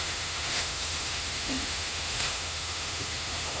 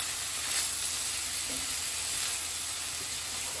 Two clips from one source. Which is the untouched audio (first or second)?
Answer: second